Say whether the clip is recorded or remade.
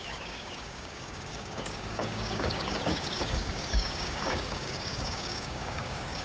remade